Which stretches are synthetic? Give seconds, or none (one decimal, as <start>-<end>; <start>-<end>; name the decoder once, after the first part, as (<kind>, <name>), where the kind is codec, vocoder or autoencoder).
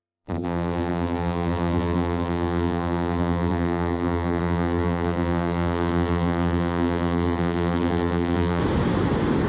0.0-8.6 (vocoder, BigVGAN v2)